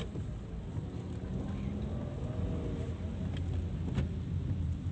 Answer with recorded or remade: recorded